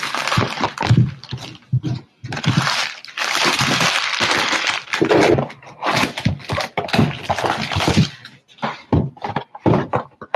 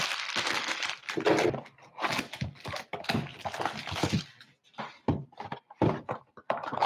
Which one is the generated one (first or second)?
first